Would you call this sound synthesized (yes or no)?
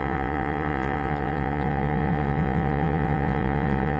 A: yes